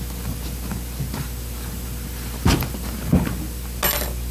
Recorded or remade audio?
recorded